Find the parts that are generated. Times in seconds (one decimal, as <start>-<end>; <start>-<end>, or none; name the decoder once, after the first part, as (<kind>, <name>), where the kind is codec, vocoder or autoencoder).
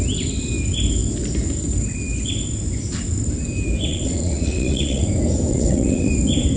3.9-5.1 (vocoder, WaveNeXt); 5.5-6.1